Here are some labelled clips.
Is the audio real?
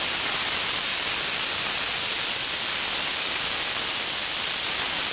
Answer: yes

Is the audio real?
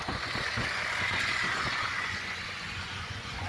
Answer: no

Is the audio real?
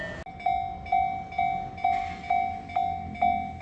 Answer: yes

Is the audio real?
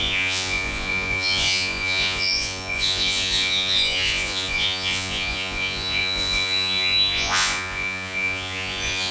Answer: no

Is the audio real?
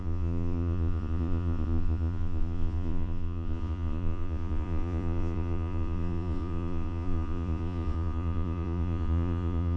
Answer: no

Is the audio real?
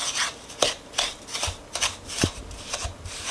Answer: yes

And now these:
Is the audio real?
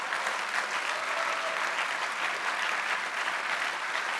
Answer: yes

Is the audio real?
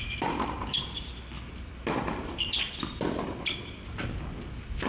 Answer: yes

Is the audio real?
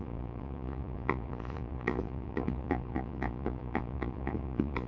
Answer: no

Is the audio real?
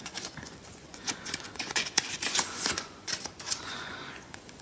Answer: no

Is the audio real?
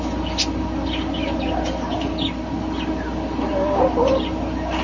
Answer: yes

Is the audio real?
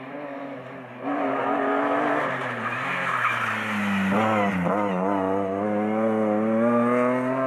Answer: yes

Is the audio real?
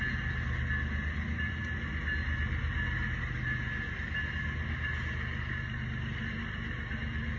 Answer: yes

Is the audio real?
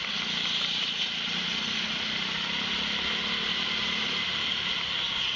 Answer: yes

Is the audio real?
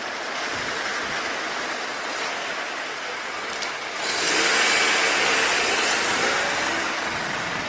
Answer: yes